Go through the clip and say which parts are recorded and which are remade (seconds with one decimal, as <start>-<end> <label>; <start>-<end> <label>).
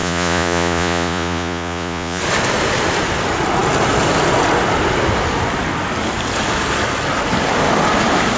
0.0-2.2 remade; 2.2-8.4 recorded